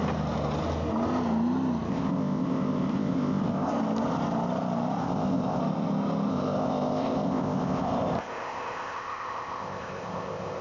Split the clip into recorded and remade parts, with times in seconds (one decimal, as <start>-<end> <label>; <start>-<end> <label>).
0.0-1.9 recorded; 1.9-3.7 remade; 3.7-5.0 recorded; 5.0-5.6 remade; 5.6-6.3 recorded; 6.3-10.6 remade